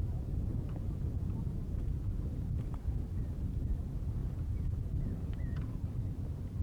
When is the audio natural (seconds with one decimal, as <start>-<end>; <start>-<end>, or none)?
0.0-0.5; 2.1-4.2; 5.7-6.6